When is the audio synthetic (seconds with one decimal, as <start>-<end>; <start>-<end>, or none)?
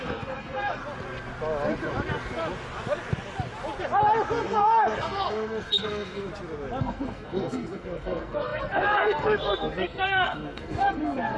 0.0-0.8; 4.4-6.3; 6.8-11.4